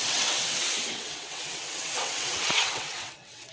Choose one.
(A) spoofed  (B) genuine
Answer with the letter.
A